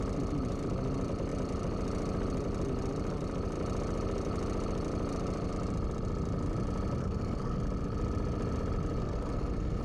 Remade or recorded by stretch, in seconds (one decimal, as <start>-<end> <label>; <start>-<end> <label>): 0.0-7.0 recorded; 7.0-7.6 remade; 7.6-9.0 recorded; 9.0-9.8 remade